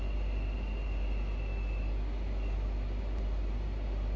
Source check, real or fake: real